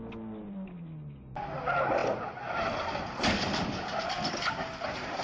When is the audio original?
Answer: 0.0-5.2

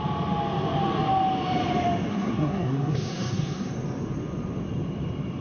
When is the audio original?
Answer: 0.0-2.1; 3.7-5.4

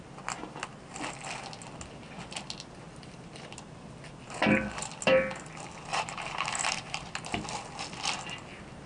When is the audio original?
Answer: 0.0-5.9; 7.1-8.9